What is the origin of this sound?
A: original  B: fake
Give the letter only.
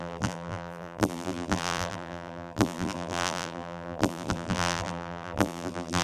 B